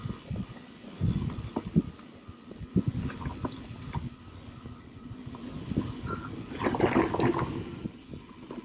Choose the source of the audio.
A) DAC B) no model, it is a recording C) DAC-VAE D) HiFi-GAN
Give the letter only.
B